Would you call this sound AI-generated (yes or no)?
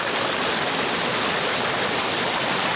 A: no